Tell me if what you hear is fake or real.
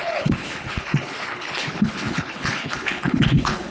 fake